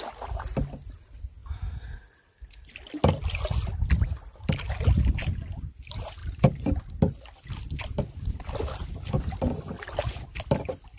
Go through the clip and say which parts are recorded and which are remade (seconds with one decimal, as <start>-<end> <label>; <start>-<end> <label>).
0.0-11.0 recorded